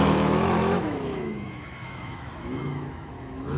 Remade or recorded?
remade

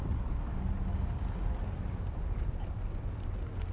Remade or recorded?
recorded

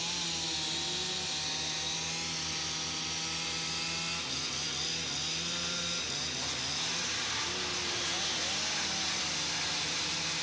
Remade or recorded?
recorded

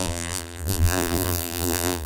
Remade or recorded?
remade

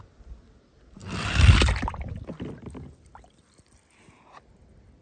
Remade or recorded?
recorded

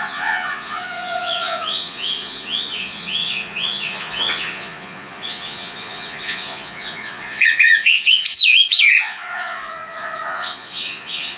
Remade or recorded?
remade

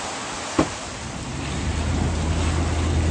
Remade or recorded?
recorded